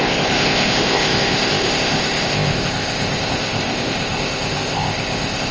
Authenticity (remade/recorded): remade